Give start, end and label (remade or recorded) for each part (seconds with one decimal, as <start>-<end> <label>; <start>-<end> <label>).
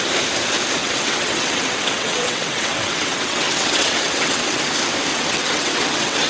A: 0.0-0.8 recorded; 0.8-4.6 remade; 4.6-5.1 recorded; 5.1-6.3 remade